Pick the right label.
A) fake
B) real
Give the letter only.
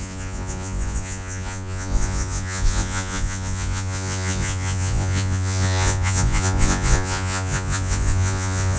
A